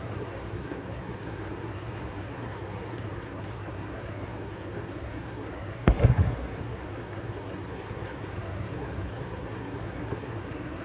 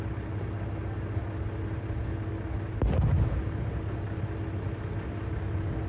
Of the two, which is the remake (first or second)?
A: first